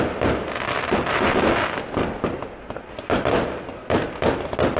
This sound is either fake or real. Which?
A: real